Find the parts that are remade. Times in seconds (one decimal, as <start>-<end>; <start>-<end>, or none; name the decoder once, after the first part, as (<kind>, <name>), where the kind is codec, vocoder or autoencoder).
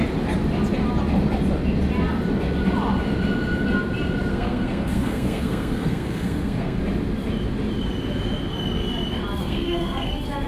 4.3-6.8 (codec, SNAC); 9.4-10.1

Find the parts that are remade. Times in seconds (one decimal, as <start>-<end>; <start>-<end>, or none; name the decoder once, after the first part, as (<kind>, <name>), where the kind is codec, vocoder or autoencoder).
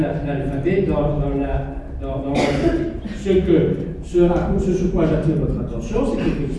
none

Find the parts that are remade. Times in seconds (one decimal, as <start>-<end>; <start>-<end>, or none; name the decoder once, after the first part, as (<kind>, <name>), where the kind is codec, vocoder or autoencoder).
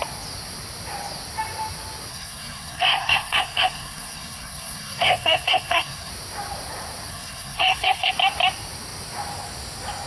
2.1-6.1 (codec, SNAC); 7.1-8.1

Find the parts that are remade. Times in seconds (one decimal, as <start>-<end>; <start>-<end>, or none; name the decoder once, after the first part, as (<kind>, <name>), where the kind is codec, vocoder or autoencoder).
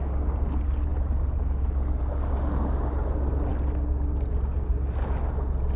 none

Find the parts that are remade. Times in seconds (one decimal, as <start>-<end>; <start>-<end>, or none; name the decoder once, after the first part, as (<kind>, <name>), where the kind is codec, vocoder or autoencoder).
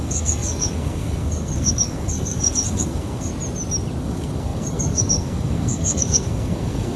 0.0-3.3 (codec, SNAC); 4.0-7.0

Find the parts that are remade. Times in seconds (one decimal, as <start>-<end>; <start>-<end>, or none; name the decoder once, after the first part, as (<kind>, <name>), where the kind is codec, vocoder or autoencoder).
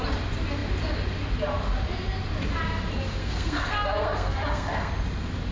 3.2-4.9 (codec, SNAC)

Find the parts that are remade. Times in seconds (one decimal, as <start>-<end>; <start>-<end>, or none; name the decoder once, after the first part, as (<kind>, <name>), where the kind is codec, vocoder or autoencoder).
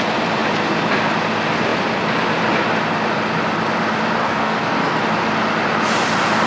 4.2-5.0 (codec, SNAC)